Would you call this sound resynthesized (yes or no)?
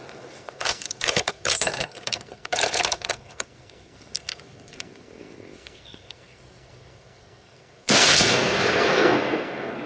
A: yes